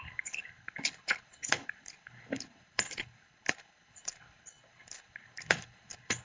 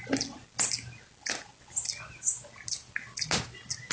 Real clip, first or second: second